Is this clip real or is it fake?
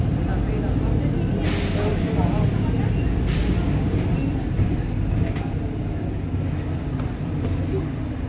real